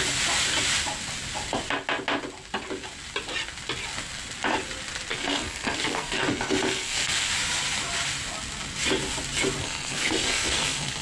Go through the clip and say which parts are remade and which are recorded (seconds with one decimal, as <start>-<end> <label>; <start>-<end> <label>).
0.0-5.1 recorded; 5.1-7.3 remade; 7.3-9.6 recorded; 9.6-11.0 remade